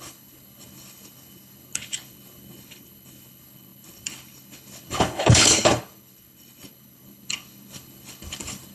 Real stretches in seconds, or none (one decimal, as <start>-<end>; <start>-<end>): none